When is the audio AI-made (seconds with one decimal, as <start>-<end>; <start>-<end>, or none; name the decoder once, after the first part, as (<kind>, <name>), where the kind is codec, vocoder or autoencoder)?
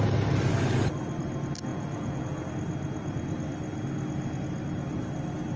1.7-2.4 (vocoder, Vocos)